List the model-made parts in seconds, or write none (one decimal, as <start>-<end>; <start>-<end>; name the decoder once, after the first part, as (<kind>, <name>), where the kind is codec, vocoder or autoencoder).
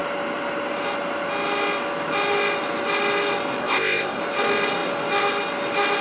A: 3.6-4.2 (codec, ZipCodec)